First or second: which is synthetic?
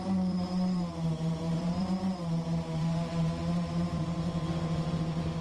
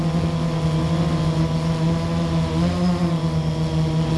first